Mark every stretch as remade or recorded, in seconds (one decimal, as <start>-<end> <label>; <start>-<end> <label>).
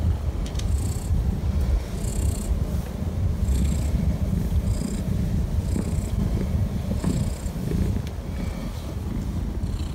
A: 0.0-9.9 recorded